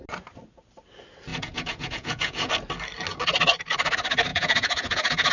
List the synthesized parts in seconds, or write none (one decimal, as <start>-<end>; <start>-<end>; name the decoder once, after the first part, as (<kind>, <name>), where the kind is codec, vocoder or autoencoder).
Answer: 1.3-2.5 (vocoder, Vocos); 4.3-5.3